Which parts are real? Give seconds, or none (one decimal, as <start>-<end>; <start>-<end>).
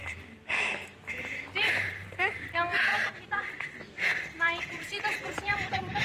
0.0-1.6; 2.9-4.3